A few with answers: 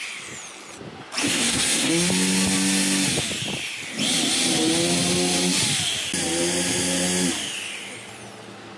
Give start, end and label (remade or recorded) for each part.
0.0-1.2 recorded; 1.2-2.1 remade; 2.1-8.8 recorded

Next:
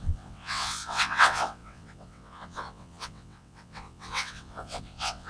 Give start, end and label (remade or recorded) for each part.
0.0-5.3 remade

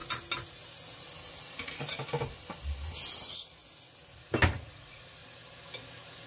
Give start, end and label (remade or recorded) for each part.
0.0-3.2 recorded; 3.2-3.6 remade; 3.6-4.5 recorded; 4.5-5.2 remade; 5.2-6.3 recorded

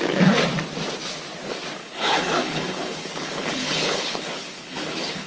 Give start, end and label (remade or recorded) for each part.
0.0-1.8 recorded; 1.8-5.3 remade

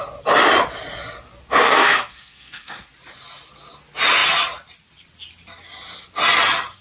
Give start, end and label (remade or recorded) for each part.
0.0-1.6 recorded; 1.6-2.9 remade; 2.9-6.8 recorded

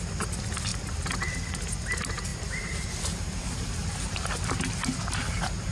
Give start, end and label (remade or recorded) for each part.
0.0-2.3 recorded; 2.3-3.5 remade; 3.5-5.7 recorded

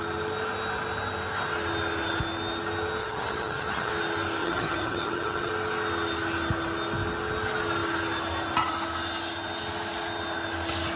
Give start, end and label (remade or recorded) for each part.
0.0-3.0 recorded; 3.0-3.9 remade; 3.9-4.4 recorded; 4.4-5.5 remade; 5.5-11.0 recorded

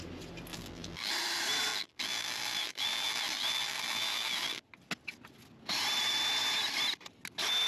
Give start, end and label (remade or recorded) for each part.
0.0-0.5 recorded; 0.5-1.1 remade; 1.1-1.7 recorded; 1.7-4.6 remade; 4.6-7.7 recorded